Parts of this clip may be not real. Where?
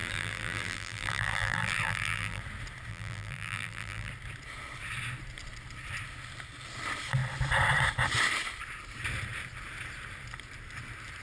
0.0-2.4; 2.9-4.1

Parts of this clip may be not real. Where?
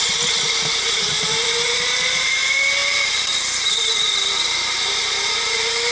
none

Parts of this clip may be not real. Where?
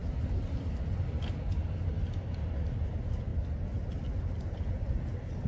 none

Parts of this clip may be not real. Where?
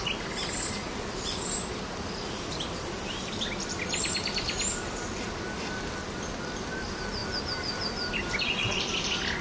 0.4-4.7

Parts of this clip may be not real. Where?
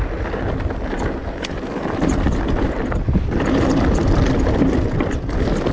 1.2-4.6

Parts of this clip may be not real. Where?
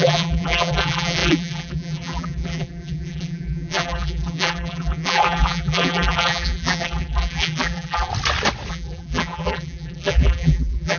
0.0-8.1; 8.7-11.0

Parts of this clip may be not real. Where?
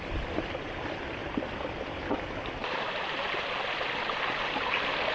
1.2-2.0